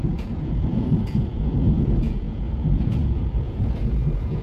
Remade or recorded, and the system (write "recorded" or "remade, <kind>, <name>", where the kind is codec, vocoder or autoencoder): remade, vocoder, Vocos